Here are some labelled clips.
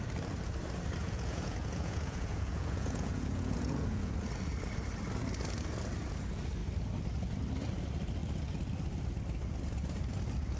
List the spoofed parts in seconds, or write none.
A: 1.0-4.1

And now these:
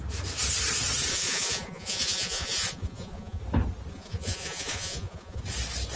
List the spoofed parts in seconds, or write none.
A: 1.1-3.4; 3.9-5.4

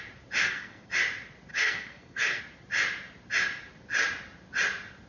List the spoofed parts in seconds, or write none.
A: 0.4-0.9; 1.5-2.4